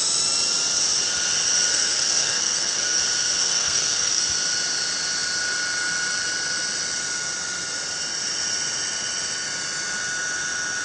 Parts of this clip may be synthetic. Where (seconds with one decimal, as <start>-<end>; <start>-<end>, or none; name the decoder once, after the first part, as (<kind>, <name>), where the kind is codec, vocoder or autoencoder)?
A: 1.7-3.0 (codec, SNAC); 3.4-4.2